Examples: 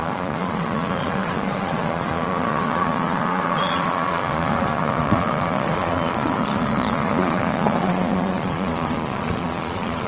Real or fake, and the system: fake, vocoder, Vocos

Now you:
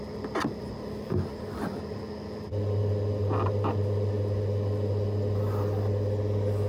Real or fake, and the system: real